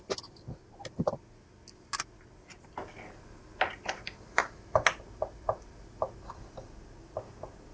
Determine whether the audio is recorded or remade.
recorded